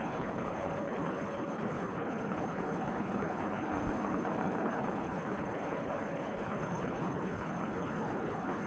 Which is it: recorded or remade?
remade